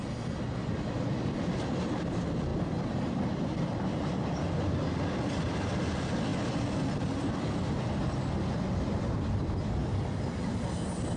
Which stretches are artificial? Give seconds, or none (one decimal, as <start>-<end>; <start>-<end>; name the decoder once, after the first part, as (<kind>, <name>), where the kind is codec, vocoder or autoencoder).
none